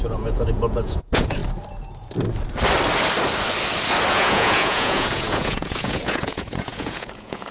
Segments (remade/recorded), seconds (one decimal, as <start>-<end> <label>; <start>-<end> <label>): 0.0-1.4 remade; 1.4-4.1 recorded; 4.1-7.5 remade